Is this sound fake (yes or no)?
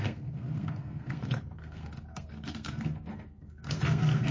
yes